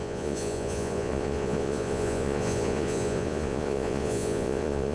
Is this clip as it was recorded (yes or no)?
no